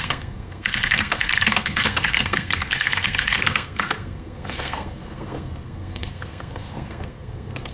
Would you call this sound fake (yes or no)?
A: yes